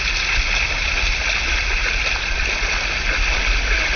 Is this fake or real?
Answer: real